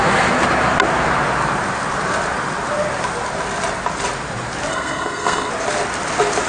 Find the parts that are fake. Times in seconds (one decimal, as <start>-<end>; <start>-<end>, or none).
4.7-5.5